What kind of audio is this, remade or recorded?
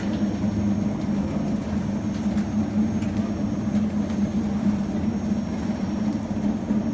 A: recorded